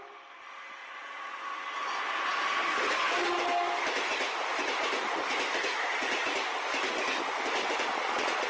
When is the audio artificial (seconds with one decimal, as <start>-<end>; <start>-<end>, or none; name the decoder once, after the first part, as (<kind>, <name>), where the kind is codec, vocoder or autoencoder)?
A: 0.8-1.4 (vocoder, Vocos); 7.9-8.5